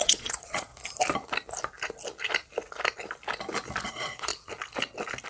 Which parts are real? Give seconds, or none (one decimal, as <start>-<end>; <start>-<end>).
0.7-3.9; 4.3-5.3